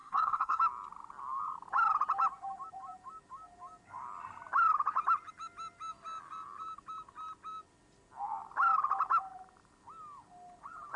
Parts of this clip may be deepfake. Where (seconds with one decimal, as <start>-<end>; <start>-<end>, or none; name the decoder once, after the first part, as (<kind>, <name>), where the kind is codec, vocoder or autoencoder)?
0.0-0.6 (codec, SNAC)